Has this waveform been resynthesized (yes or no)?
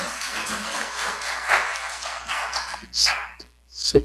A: yes